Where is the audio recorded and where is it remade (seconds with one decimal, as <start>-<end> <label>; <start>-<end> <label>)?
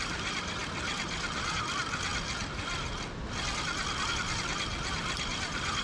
0.0-5.8 recorded